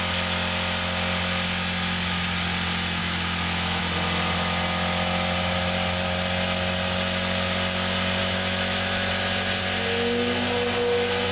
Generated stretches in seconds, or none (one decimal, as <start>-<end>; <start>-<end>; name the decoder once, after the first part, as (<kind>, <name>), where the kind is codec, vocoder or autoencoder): 3.0-3.8 (autoencoder, DAC-VAE); 8.2-9.1